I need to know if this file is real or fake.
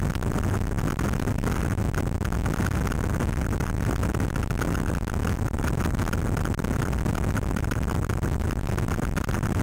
real